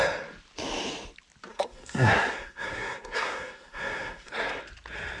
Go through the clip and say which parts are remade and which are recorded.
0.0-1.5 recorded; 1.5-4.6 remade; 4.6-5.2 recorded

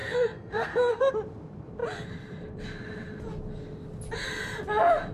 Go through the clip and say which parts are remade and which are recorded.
0.0-1.1 remade; 1.1-5.1 recorded